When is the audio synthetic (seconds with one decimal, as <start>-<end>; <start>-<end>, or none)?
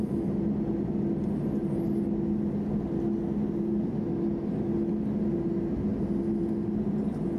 none